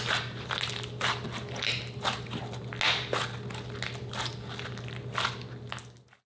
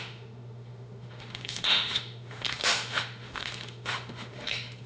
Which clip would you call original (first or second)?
first